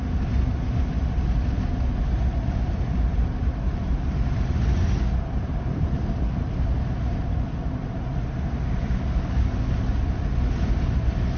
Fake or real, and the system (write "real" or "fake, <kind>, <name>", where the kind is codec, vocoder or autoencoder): real